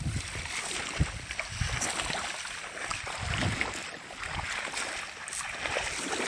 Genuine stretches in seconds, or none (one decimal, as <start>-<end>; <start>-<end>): 0.0-6.3